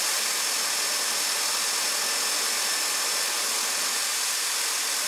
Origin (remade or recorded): recorded